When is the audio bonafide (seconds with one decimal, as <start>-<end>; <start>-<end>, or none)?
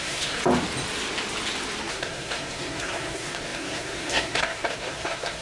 0.4-1.9